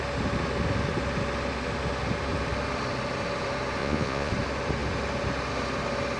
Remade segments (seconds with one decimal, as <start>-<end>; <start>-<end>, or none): 3.8-4.3